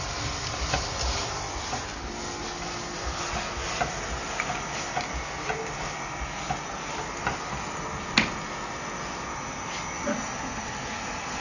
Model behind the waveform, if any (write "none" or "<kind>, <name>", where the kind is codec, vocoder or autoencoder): none